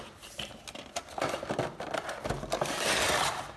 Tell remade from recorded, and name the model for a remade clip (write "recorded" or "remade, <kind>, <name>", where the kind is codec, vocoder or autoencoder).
recorded